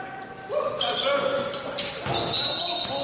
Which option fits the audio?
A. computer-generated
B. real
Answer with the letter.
B